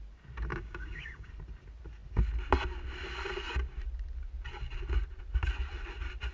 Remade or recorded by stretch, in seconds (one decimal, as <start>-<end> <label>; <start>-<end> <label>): 0.0-0.5 recorded; 0.5-1.3 remade; 1.3-6.3 recorded